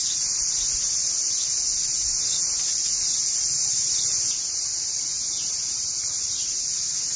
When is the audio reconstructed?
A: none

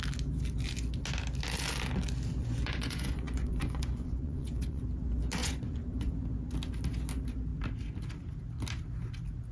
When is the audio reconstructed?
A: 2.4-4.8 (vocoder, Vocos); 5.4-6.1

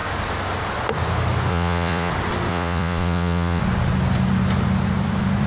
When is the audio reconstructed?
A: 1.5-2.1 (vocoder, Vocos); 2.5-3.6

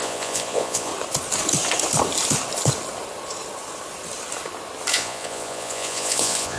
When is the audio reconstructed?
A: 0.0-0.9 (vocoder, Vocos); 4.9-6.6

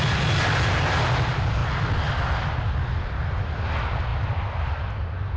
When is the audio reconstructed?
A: 4.1-4.9 (vocoder, BigVGAN v2)

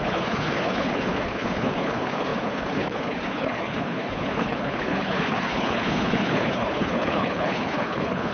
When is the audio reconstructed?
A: 0.0-8.3 (codec, HILCodec)

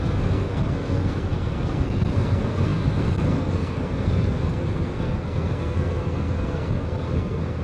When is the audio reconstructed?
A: 0.0-7.6 (codec, SNAC)

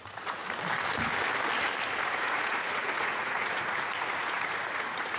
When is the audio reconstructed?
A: 0.0-0.4 (vocoder, Vocos); 2.0-5.2